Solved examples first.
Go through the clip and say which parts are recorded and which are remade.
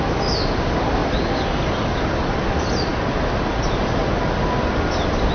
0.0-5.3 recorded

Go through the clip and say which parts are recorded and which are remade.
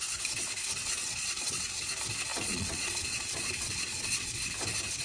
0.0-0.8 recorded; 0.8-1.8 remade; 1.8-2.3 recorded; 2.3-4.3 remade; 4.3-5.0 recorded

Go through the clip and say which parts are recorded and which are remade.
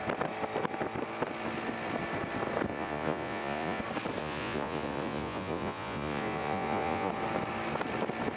0.0-2.7 recorded; 2.7-3.8 remade; 3.8-4.2 recorded; 4.2-7.1 remade; 7.1-8.4 recorded